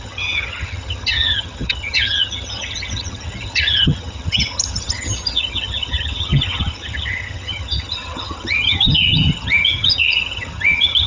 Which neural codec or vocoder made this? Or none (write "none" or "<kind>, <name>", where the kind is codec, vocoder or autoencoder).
vocoder, HiFi-GAN